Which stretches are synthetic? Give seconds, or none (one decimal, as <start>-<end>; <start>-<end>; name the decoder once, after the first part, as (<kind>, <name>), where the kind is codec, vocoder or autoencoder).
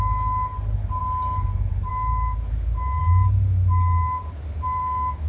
none